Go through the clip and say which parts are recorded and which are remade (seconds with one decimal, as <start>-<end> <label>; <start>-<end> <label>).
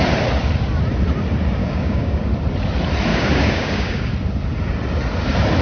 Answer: 0.0-1.6 recorded; 1.6-2.2 remade; 2.2-3.1 recorded; 3.1-4.1 remade; 4.1-5.6 recorded